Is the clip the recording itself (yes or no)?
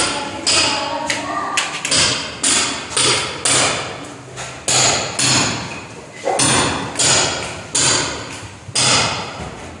yes